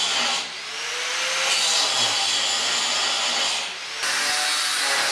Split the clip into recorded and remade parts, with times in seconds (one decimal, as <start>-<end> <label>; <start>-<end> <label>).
0.0-5.1 recorded